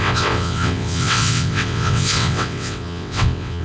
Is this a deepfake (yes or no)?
yes